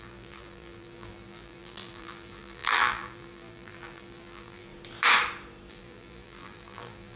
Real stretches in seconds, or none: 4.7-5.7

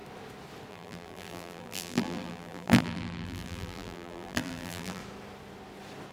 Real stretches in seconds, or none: 0.0-0.7; 5.0-6.1